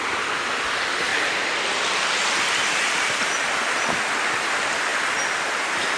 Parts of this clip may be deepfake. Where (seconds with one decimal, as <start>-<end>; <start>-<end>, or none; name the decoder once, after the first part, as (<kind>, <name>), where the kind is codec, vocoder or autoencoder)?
1.1-4.0 (vocoder, BigVGAN v2)